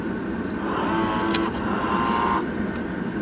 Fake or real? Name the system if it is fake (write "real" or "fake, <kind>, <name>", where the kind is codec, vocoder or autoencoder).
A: real